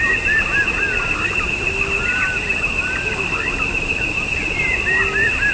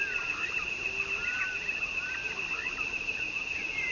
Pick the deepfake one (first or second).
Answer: first